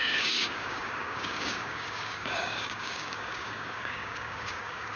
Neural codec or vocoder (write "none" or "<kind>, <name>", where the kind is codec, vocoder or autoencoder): codec, DAC